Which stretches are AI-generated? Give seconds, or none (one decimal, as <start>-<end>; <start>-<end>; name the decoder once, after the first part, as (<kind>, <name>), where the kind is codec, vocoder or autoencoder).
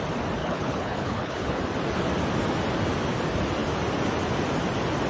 0.4-1.6 (codec, HILCodec)